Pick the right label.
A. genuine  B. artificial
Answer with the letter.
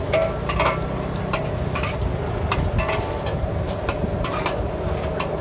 A